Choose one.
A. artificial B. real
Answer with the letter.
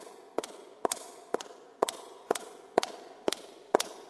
A